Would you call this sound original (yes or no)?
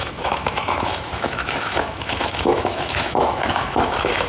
no